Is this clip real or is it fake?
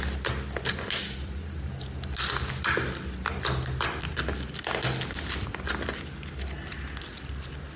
real